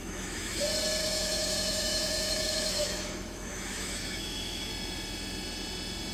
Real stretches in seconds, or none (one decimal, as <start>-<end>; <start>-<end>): 0.6-1.0; 4.7-6.1